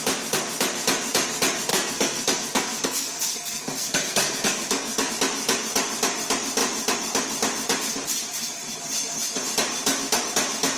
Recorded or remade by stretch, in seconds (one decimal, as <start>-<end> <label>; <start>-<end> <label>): 0.0-1.7 recorded; 1.7-5.1 remade; 5.1-10.8 recorded